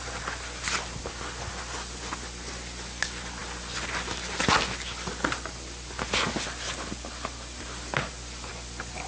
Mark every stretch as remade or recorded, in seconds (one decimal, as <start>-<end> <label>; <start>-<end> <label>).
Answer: 0.0-9.1 recorded